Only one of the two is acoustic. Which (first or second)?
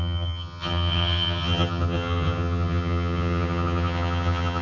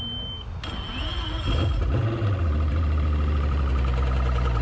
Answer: second